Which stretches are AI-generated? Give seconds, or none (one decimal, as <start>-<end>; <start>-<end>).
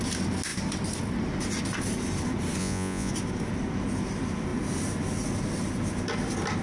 2.6-3.1